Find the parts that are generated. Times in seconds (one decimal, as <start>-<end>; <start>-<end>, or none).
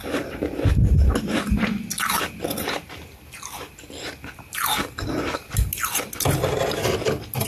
none